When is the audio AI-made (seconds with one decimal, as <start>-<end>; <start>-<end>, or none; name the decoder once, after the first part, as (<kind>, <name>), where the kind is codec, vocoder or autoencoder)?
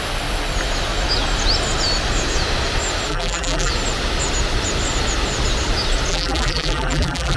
3.1-3.7 (vocoder, BigVGAN v2); 6.1-7.4